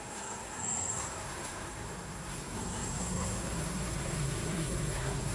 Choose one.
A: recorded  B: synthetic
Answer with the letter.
B